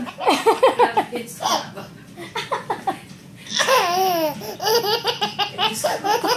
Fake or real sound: real